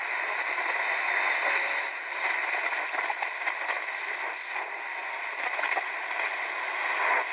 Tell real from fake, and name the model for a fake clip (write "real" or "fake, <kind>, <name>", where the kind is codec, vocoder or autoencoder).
real